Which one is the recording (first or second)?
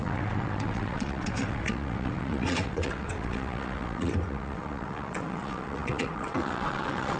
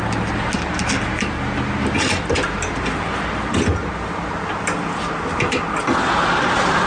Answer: second